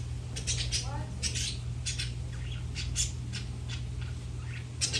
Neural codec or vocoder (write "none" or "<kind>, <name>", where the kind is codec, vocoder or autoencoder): none